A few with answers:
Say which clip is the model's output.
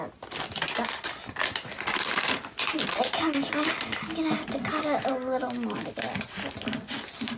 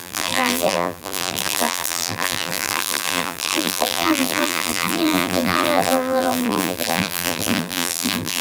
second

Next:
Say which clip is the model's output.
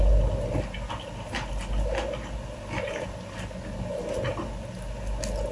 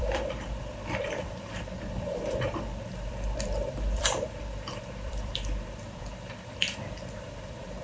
second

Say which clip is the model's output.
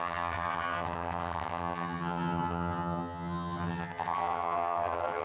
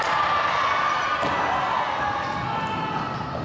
first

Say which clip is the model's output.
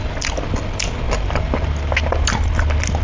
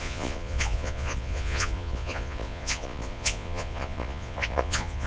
second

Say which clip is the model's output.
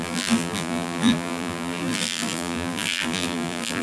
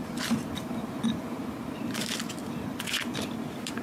first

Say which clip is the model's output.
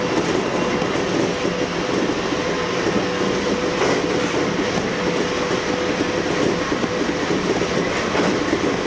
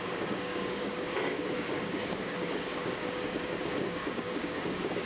second